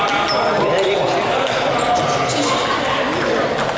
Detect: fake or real real